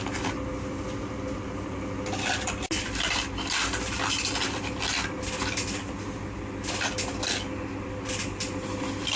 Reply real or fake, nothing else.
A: real